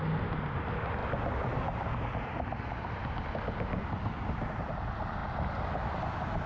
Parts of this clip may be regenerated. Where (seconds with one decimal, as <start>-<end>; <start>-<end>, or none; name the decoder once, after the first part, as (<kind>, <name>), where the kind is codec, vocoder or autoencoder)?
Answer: none